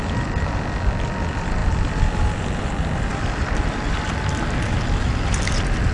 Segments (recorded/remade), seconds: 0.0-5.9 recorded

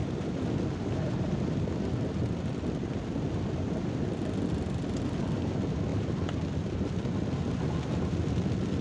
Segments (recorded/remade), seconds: 0.0-0.5 remade; 0.5-8.8 recorded

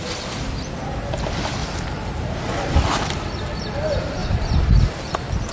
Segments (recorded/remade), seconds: 0.0-1.6 recorded; 1.6-2.5 remade; 2.5-4.2 recorded; 4.2-4.8 remade; 4.8-5.5 recorded

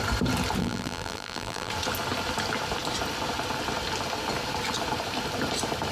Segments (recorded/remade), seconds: 0.0-0.6 recorded; 0.6-1.7 remade; 1.7-5.9 recorded

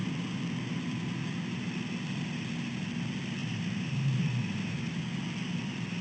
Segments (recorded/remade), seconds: 0.0-3.4 recorded; 3.4-5.0 remade; 5.0-6.0 recorded

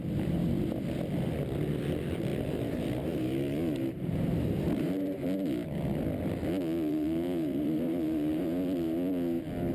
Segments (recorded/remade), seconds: 0.0-2.3 recorded; 2.3-5.2 remade; 5.2-6.9 recorded; 6.9-8.4 remade; 8.4-9.7 recorded